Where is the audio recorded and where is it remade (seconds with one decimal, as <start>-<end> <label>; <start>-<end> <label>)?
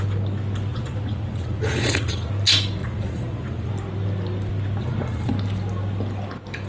0.0-0.7 recorded; 0.7-2.3 remade; 2.3-2.8 recorded; 2.8-3.7 remade; 3.7-4.8 recorded; 4.8-5.3 remade; 5.3-6.7 recorded